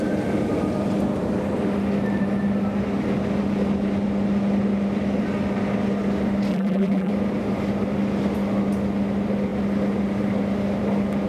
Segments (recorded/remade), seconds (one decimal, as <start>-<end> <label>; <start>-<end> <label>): 0.0-6.5 recorded; 6.5-7.1 remade; 7.1-11.3 recorded